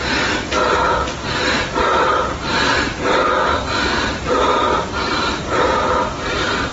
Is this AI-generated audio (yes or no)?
no